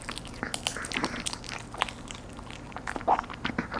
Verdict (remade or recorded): recorded